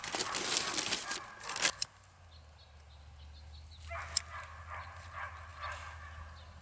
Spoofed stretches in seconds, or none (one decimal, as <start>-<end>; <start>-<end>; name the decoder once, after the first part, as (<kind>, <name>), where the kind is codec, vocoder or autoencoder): none